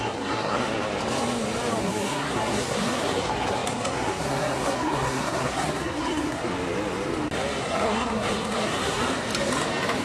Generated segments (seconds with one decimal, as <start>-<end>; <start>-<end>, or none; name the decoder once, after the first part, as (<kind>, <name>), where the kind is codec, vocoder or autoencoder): 0.0-0.6 (codec, SNAC); 1.8-6.5; 7.6-9.0